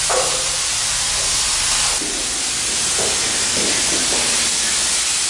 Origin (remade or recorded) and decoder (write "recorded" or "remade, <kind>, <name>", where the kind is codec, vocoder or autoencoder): recorded